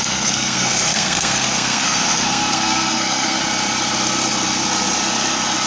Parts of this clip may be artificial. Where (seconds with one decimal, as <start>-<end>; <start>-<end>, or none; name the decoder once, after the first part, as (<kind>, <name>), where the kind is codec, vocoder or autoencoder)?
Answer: 0.0-3.4 (codec, SNAC)